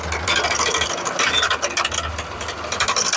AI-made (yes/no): no